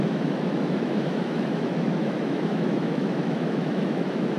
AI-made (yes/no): yes